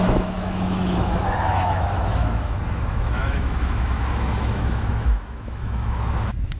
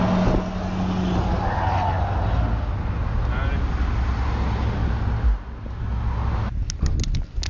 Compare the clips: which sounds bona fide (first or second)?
second